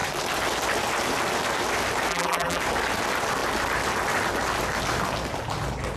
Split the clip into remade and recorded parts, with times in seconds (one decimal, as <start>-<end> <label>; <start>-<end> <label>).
0.0-2.1 recorded; 2.1-2.6 remade; 2.6-6.0 recorded

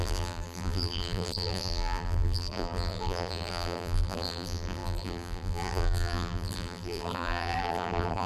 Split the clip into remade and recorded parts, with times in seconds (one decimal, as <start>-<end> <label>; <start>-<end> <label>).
0.0-8.3 remade

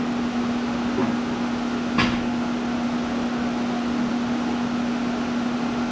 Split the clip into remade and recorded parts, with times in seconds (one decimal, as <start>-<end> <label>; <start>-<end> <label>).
0.0-5.9 recorded

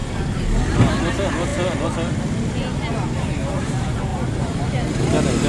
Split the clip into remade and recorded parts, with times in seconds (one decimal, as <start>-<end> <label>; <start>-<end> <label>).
0.0-0.9 remade; 0.9-4.1 recorded; 4.1-4.9 remade; 4.9-5.5 recorded

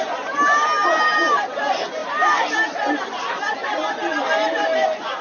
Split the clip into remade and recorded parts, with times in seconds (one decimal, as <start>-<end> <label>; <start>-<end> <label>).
0.0-5.2 recorded

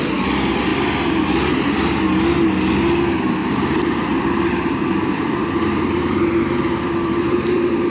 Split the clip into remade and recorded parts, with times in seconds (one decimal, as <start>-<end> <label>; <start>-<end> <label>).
0.0-3.4 recorded; 3.4-7.9 remade